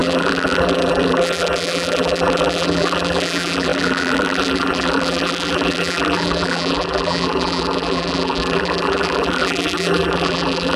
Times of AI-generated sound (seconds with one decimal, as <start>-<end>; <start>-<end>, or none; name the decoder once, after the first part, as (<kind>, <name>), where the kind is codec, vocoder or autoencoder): 0.0-10.8 (vocoder, BigVGAN v2)